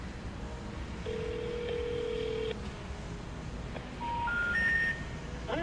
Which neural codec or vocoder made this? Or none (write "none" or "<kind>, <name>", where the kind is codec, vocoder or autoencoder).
none